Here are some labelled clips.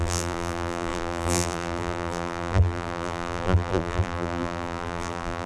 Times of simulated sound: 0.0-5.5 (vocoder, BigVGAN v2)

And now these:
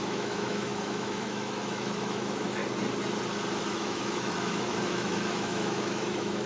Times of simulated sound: 0.0-2.6 (autoencoder, DAC-VAE); 3.6-6.5